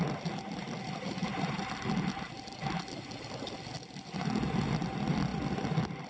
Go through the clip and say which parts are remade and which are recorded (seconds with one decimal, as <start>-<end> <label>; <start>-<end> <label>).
0.0-1.2 recorded; 1.2-2.9 remade; 2.9-5.3 recorded; 5.3-6.1 remade

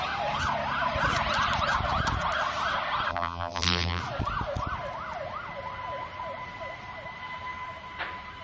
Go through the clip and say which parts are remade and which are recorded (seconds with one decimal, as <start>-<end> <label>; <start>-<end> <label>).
0.0-3.1 recorded; 3.1-4.0 remade; 4.0-8.4 recorded

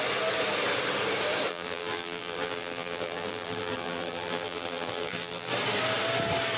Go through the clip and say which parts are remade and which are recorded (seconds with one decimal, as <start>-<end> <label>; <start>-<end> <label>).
0.0-1.5 recorded; 1.5-5.5 remade; 5.5-6.6 recorded